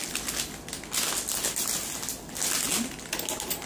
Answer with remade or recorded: recorded